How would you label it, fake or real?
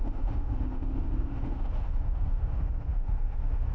fake